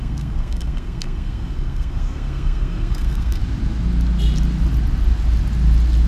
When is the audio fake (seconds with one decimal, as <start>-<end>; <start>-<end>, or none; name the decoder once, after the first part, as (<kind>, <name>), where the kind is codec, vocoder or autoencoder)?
0.0-3.4 (codec, SNAC)